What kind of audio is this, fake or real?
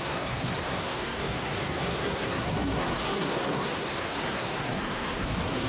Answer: fake